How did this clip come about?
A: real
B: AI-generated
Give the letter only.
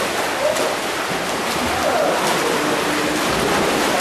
A